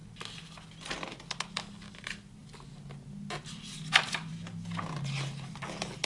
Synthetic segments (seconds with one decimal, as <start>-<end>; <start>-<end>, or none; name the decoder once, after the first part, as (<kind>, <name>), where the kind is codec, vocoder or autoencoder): none